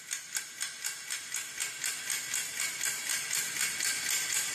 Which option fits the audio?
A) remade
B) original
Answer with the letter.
B